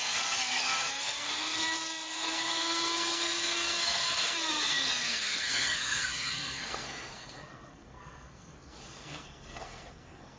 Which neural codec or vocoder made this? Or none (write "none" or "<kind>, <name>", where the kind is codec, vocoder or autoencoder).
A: codec, SNAC